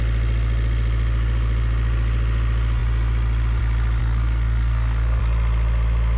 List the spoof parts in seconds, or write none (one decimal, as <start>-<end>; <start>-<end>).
4.0-5.2